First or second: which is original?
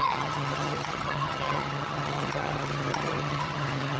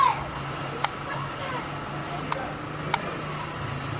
second